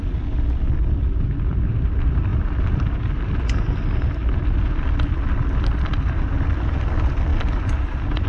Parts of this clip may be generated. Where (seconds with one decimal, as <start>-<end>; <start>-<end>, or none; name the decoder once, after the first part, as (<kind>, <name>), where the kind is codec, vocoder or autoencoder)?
none